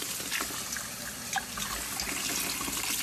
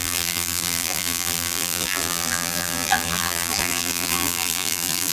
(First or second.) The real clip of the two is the first